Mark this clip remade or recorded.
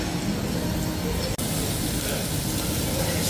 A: recorded